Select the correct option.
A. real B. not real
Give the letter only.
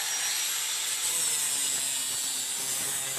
A